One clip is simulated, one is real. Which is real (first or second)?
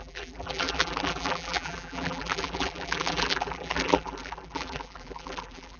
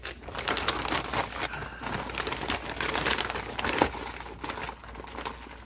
second